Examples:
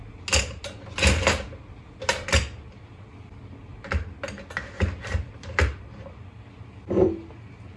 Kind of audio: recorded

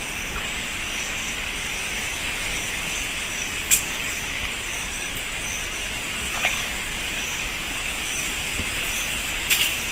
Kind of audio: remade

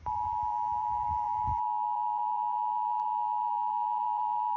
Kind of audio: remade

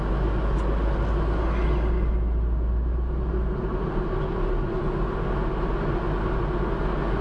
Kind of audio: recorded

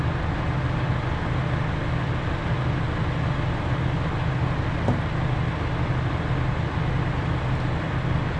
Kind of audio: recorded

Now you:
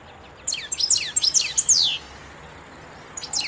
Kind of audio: recorded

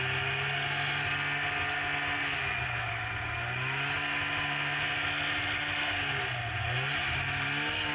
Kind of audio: recorded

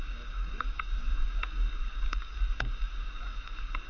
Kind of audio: remade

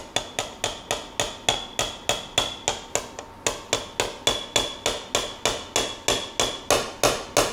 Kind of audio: recorded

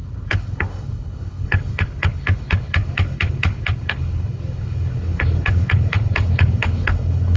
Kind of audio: remade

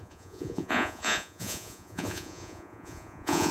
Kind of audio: remade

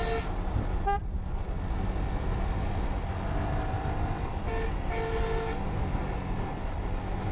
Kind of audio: recorded